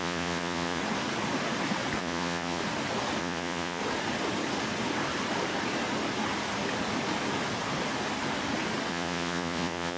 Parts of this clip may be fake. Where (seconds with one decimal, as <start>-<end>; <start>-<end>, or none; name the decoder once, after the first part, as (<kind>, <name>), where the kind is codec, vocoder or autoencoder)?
0.0-0.8 (vocoder, Vocos); 2.0-2.6; 3.2-3.8; 8.9-10.0